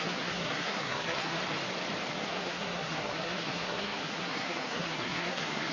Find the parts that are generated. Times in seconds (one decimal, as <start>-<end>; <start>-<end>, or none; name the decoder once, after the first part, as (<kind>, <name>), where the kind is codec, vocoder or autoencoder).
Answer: 0.0-1.4 (codec, SNAC); 2.1-5.7